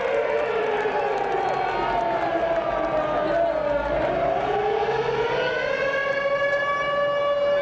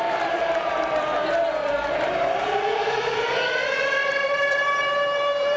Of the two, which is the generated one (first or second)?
second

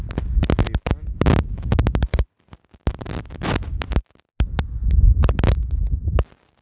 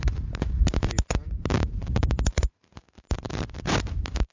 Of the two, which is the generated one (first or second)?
second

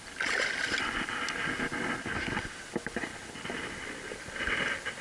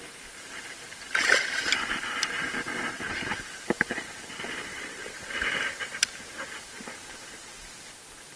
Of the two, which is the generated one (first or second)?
second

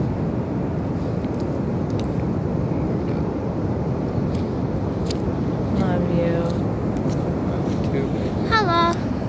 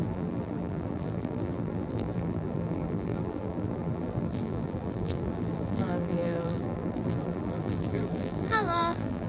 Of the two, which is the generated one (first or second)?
second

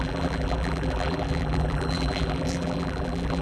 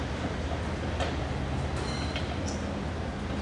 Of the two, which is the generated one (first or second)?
first